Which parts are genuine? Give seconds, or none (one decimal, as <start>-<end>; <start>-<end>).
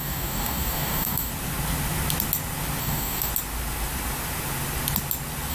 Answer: 1.3-2.8; 3.3-5.5